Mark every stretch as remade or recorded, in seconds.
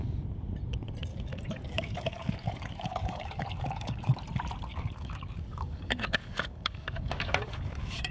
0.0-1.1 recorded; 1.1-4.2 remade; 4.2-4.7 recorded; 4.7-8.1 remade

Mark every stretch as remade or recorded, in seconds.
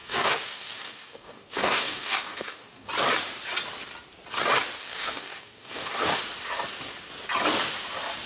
0.0-2.9 remade; 2.9-4.8 recorded; 4.8-6.2 remade; 6.2-8.3 recorded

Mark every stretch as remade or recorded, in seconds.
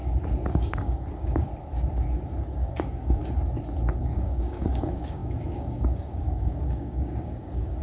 0.0-0.5 recorded; 0.5-1.5 remade; 1.5-2.4 recorded; 2.4-3.2 remade; 3.2-4.0 recorded; 4.0-7.8 remade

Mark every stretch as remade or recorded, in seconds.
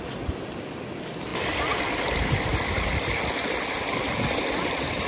0.0-5.1 recorded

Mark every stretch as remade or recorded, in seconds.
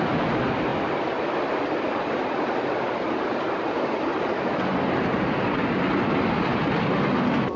0.0-7.6 recorded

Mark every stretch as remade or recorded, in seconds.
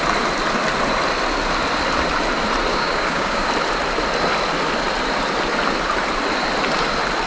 0.0-2.7 recorded; 2.7-3.5 remade; 3.5-7.3 recorded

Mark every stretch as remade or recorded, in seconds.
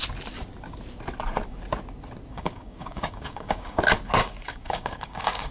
0.0-2.3 recorded; 2.3-3.8 remade; 3.8-4.2 recorded; 4.2-5.5 remade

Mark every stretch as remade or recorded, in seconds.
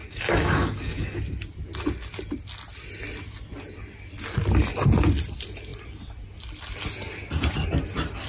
0.0-1.2 remade; 1.2-8.3 recorded